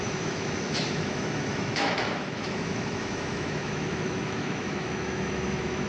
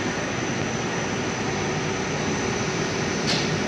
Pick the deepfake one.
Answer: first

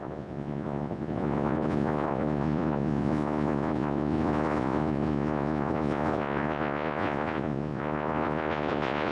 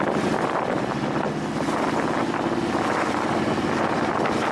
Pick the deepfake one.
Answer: first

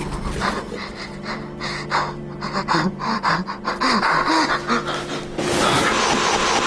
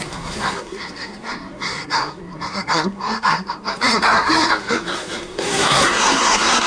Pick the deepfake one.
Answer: second